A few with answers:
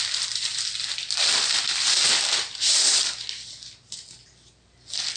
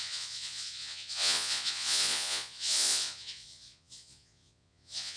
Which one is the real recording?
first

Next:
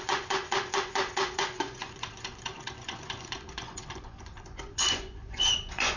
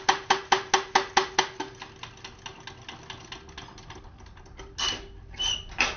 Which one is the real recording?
second